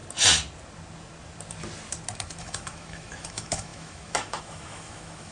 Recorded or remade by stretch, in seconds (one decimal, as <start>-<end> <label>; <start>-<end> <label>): 0.0-2.4 recorded; 2.4-5.3 remade